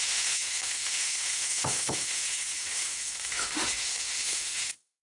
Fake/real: fake